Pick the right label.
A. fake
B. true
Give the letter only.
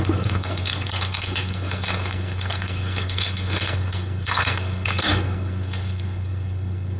A